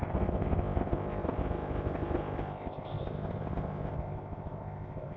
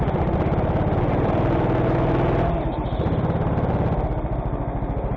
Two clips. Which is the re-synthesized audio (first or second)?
first